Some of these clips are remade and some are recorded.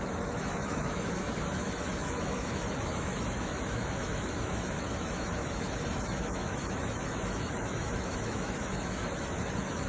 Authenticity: remade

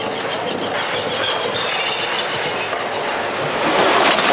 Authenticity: recorded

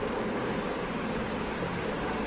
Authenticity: recorded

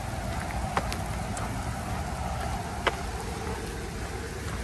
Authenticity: recorded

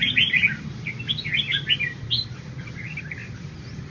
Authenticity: recorded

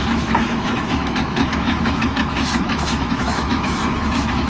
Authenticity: remade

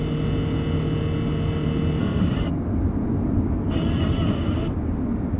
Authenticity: recorded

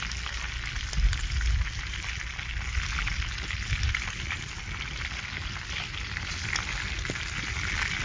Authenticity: recorded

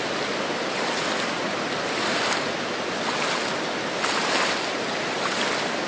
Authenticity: recorded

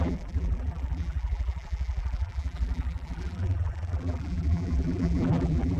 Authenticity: remade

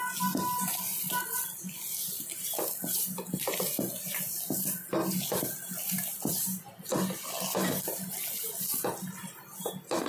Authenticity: recorded